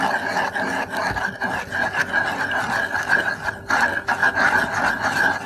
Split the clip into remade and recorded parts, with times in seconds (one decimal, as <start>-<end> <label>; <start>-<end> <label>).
0.0-4.2 recorded; 4.2-4.9 remade; 4.9-5.5 recorded